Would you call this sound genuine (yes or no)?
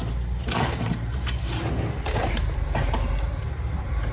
no